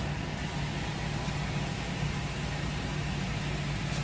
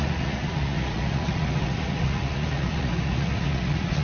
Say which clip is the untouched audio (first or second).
first